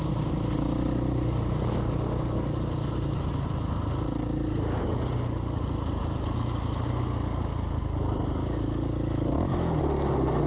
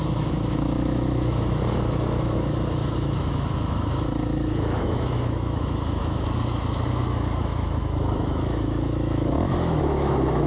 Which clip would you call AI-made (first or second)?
second